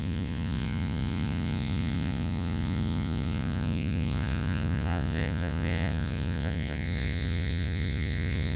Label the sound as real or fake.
fake